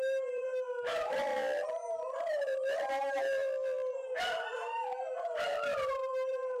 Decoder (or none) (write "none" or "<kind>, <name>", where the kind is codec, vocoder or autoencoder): vocoder, BigVGAN v2